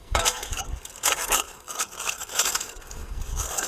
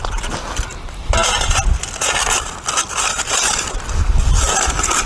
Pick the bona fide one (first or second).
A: second